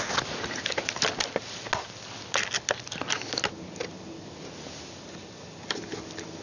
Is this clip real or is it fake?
real